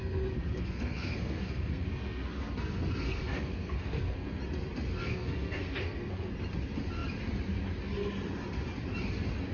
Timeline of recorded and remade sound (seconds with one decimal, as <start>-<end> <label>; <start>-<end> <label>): 0.0-4.4 remade; 4.4-4.9 recorded; 4.9-6.3 remade; 6.3-9.5 recorded